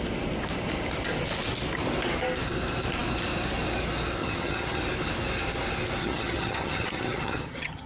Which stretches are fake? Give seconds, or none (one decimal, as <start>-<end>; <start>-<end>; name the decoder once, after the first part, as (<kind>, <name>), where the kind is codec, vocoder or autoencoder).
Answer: 4.2-4.8 (vocoder, HiFi-GAN); 6.0-7.9